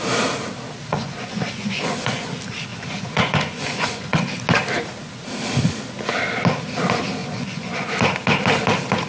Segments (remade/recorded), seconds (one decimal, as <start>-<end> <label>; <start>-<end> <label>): 0.0-0.9 recorded; 0.9-2.3 remade; 2.3-2.7 recorded; 2.7-4.2 remade; 4.2-7.2 recorded; 7.2-7.9 remade; 7.9-9.1 recorded